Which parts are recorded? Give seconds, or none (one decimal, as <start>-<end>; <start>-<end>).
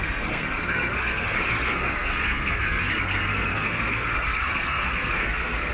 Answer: none